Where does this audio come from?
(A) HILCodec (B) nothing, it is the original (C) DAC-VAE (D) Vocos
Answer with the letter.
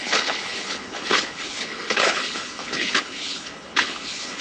A